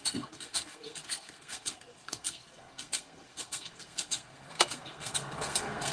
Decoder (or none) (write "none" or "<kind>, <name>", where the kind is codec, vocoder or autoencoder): codec, SNAC